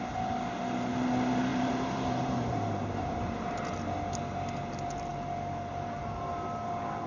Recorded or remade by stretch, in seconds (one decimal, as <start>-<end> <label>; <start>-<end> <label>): 0.0-1.5 recorded; 1.5-3.6 remade; 3.6-7.1 recorded